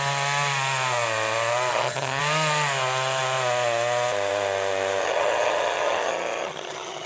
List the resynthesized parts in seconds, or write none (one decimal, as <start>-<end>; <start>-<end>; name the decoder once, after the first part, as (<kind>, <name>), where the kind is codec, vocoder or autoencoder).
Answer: 1.7-2.2 (vocoder, HiFi-GAN); 5.0-7.1